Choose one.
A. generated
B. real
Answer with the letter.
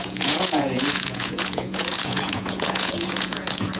A